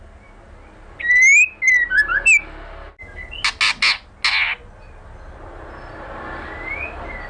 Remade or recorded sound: recorded